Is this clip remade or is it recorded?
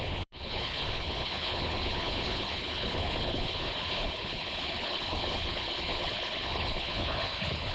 remade